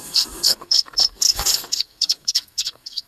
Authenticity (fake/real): fake